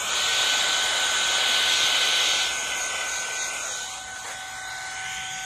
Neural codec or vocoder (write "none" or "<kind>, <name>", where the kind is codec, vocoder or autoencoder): none